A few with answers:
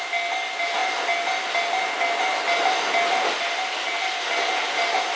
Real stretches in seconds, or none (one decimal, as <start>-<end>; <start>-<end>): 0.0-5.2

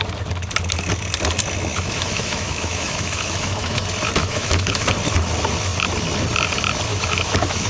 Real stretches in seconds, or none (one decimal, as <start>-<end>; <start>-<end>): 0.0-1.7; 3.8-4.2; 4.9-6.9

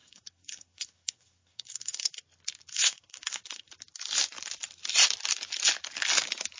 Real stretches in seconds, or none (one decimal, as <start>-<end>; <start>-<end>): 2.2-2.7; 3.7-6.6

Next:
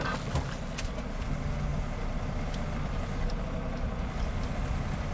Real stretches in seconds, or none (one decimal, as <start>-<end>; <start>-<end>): 0.0-5.1

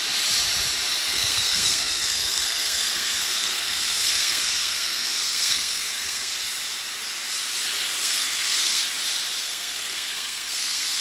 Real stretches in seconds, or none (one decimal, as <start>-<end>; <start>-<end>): 0.0-1.1; 6.3-8.0; 8.8-9.4